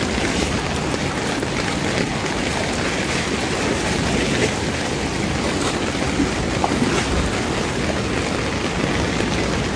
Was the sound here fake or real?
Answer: real